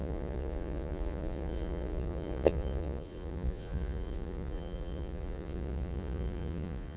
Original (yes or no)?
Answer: no